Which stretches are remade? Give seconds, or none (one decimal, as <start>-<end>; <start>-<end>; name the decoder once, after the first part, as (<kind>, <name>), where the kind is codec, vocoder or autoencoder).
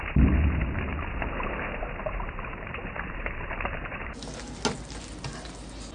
0.9-4.1 (vocoder, BigVGAN v2)